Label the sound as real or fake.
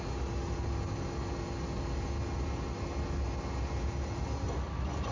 real